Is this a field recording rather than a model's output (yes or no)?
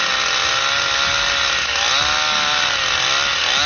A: yes